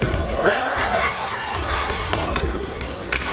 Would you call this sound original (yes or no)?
no